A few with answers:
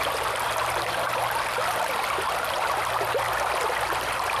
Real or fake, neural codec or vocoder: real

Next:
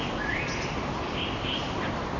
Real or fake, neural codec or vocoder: real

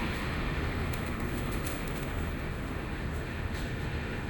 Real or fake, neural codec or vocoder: fake, autoencoder, DAC-VAE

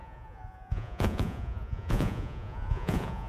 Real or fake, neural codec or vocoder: fake, vocoder, Vocos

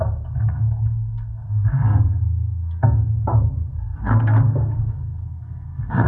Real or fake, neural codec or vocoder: fake, codec, SNAC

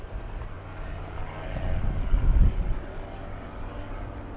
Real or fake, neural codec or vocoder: real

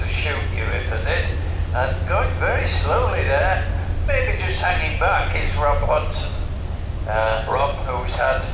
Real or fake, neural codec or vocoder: real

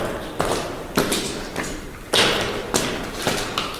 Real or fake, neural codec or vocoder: real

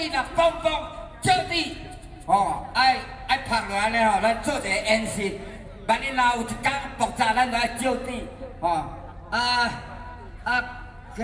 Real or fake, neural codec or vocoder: real